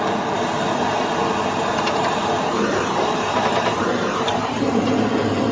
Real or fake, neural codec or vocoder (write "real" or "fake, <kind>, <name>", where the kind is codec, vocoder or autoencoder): fake, vocoder, BigVGAN v2